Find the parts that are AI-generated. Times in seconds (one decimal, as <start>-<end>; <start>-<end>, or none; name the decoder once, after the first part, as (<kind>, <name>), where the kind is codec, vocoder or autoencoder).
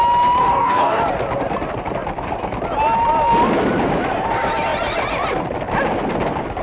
0.4-1.0 (codec, DAC)